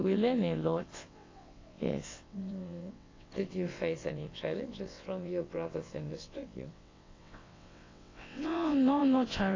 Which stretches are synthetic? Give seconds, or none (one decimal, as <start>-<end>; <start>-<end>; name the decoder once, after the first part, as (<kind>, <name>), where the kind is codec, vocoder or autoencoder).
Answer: 0.0-9.6 (vocoder, WaveNeXt)